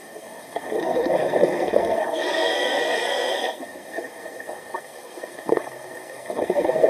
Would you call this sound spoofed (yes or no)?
yes